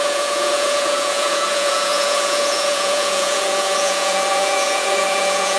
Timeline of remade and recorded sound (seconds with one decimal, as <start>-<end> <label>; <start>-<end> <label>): 0.0-5.6 remade